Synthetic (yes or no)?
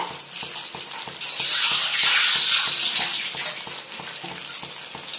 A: no